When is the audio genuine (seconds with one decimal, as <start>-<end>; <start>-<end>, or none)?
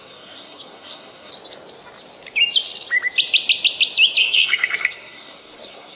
1.3-4.2